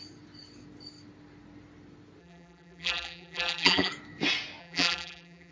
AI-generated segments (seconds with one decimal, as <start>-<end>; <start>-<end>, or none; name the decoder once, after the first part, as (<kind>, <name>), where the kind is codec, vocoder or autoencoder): 2.2-3.9 (vocoder, BigVGAN v2); 4.6-5.5